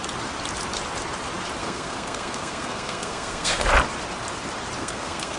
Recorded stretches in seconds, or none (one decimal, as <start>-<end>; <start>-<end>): 0.0-1.6; 3.6-4.8

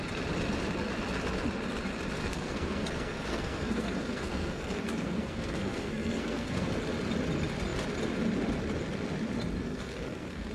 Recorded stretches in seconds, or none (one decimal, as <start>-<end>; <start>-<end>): 0.0-2.2; 6.7-9.6

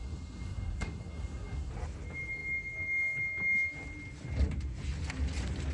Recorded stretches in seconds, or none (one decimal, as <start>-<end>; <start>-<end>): 1.7-5.7

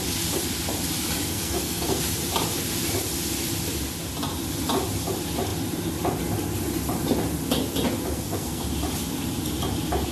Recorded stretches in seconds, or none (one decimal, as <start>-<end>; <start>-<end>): 0.0-1.3; 2.0-8.1; 8.7-10.1